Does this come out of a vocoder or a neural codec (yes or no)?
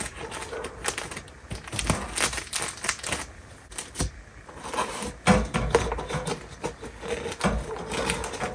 no